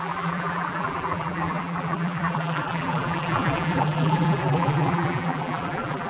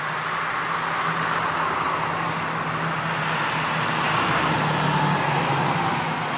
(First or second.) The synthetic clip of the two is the first